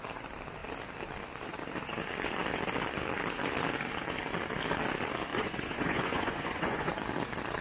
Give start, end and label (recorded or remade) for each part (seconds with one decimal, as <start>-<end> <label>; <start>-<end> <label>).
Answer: 0.0-5.3 recorded; 5.3-6.9 remade; 6.9-7.6 recorded